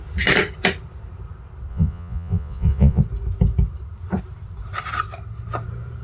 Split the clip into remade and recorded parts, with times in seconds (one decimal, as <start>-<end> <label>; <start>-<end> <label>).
0.0-1.7 recorded; 1.7-3.0 remade; 3.0-6.0 recorded